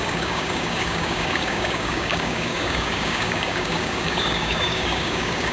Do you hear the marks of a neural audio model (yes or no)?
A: yes